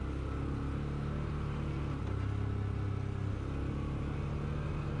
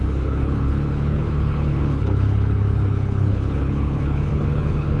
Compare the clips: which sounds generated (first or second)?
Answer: second